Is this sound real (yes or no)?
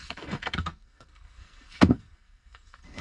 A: no